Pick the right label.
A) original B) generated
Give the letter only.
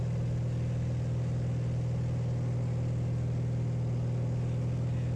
A